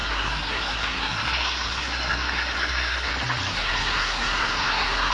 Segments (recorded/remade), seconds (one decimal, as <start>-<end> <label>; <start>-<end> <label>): 0.0-3.1 remade; 3.1-3.5 recorded; 3.5-5.1 remade